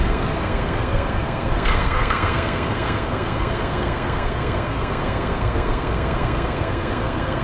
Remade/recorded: remade